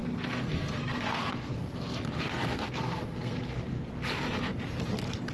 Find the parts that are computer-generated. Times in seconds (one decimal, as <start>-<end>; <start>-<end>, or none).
0.0-1.5; 2.2-3.9